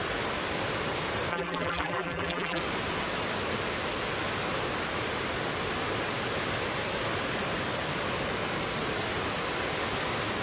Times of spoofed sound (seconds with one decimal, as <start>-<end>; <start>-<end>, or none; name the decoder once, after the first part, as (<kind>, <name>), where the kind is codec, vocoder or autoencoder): 1.3-2.6 (vocoder, BigVGAN v2)